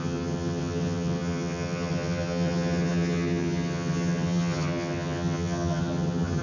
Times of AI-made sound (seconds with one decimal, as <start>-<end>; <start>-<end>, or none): 0.0-6.4